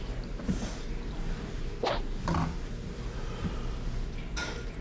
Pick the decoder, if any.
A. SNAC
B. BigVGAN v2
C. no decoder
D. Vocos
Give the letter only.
C